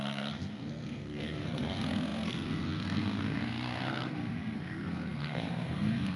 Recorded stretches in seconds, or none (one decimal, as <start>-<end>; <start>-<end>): none